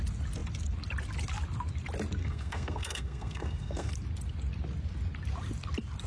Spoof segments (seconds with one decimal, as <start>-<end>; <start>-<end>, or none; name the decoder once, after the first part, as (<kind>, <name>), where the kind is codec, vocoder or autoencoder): 2.2-3.9 (codec, SNAC)